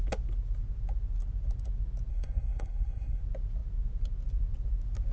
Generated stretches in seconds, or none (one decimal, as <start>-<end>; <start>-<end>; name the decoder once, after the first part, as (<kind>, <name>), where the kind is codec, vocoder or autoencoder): 2.1-3.2 (codec, SNAC)